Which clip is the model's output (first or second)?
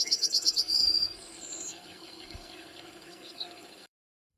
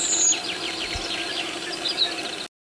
first